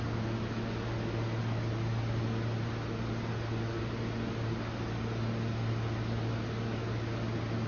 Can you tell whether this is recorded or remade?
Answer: recorded